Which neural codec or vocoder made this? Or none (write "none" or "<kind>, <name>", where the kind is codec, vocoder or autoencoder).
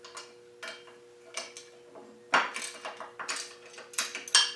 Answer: none